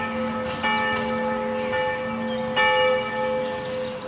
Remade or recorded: recorded